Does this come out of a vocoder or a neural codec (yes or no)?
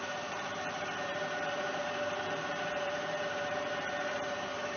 yes